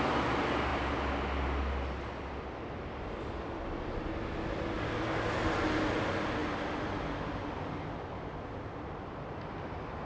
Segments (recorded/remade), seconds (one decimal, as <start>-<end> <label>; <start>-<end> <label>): 0.0-10.1 recorded